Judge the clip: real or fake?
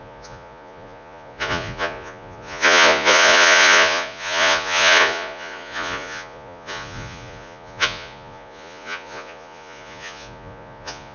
fake